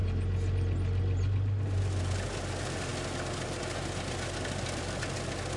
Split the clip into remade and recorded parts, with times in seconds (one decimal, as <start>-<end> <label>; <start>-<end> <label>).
0.0-5.6 recorded